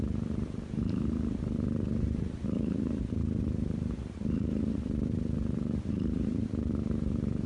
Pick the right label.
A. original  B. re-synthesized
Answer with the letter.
B